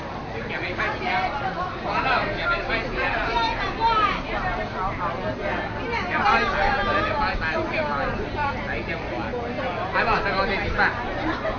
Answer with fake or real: real